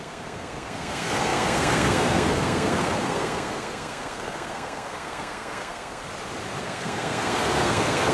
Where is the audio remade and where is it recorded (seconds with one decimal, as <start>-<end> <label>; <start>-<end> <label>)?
0.0-6.0 remade; 6.0-6.6 recorded; 6.6-8.1 remade